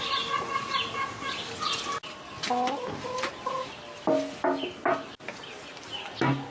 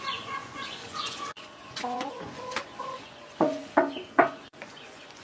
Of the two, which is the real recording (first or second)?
first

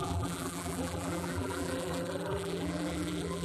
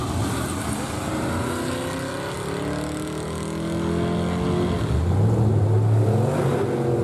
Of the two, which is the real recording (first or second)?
second